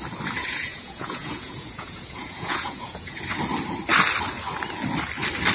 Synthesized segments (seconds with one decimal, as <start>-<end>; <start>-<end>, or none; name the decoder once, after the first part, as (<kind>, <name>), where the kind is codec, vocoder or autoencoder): 0.4-3.2 (vocoder, Vocos)

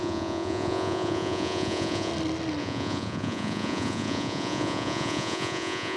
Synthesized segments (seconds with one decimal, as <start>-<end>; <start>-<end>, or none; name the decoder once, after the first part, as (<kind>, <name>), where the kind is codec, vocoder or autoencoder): 0.0-2.1 (vocoder, Vocos); 2.6-6.0

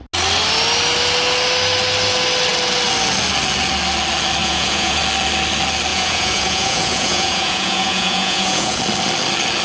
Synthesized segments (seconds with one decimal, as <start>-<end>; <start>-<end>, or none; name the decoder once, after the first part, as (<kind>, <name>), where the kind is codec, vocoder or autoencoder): 4.4-5.0 (vocoder, Vocos); 5.9-8.8

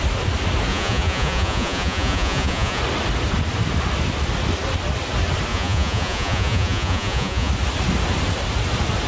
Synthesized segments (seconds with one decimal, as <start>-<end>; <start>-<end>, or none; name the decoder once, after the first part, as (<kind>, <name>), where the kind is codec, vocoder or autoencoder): 0.7-2.8 (vocoder, Vocos); 5.5-7.5

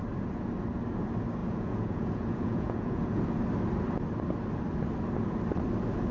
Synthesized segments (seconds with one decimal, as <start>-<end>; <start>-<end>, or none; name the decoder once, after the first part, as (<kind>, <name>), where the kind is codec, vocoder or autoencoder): 1.4-3.3 (vocoder, Vocos)

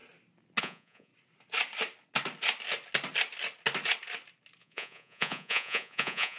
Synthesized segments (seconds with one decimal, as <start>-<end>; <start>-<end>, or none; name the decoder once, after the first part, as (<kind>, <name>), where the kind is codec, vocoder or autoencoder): 0.6-1.1 (vocoder, Vocos); 4.6-6.4